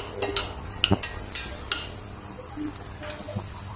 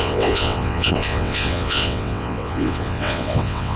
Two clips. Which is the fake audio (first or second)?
second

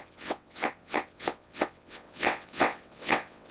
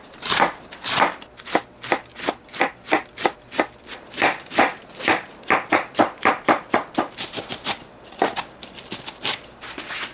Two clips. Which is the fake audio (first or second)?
first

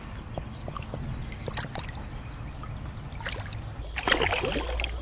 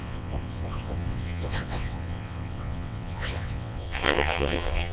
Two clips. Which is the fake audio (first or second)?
second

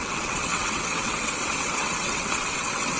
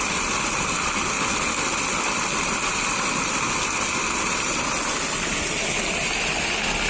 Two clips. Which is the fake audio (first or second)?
first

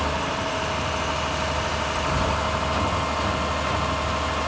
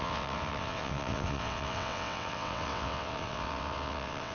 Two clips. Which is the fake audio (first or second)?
second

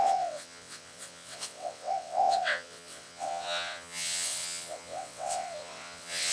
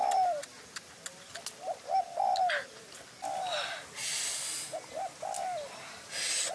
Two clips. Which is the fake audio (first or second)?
first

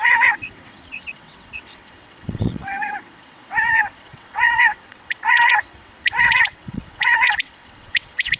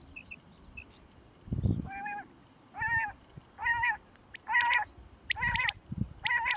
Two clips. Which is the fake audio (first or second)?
first